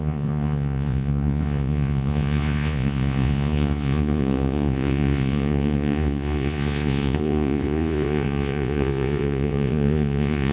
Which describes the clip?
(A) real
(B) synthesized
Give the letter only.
B